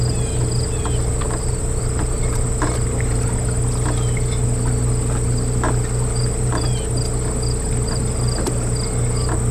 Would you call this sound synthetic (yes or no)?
no